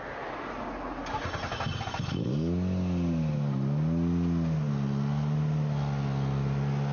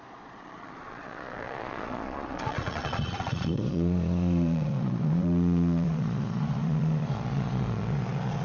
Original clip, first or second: first